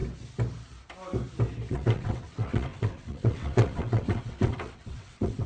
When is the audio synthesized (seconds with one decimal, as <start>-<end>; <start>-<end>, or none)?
1.7-5.5